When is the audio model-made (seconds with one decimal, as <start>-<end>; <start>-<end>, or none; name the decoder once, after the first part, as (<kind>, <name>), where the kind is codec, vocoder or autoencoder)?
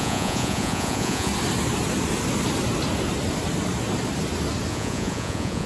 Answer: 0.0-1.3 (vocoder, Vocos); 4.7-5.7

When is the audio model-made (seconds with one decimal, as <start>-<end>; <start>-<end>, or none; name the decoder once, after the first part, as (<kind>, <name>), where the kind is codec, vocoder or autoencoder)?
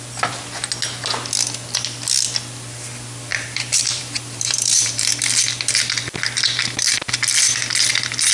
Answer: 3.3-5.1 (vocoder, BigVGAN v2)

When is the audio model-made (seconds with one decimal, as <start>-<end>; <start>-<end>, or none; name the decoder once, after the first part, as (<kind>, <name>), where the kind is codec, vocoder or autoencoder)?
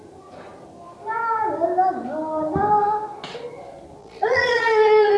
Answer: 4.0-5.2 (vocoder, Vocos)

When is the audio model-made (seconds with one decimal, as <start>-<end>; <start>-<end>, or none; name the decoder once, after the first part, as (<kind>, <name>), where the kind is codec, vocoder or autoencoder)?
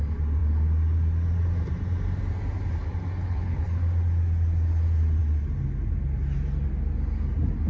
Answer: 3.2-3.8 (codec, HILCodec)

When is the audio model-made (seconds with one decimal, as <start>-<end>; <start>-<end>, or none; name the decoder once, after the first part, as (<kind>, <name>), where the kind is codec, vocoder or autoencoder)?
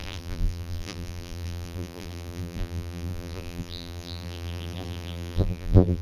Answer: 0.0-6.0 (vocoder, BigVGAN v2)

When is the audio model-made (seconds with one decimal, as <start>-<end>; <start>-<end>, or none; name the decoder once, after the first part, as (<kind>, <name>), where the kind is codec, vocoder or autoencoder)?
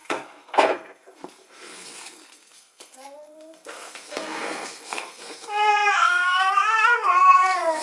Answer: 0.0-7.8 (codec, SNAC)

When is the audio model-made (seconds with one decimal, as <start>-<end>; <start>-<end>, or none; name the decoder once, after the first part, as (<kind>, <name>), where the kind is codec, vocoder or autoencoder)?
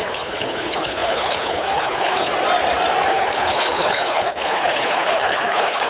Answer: 0.0-2.3 (codec, HILCodec); 3.1-5.9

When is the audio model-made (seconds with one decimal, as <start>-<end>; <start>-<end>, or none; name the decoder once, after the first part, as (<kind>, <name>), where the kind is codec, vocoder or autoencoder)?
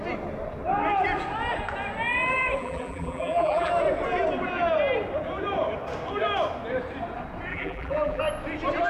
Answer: 2.6-3.7 (vocoder, BigVGAN v2); 7.5-8.2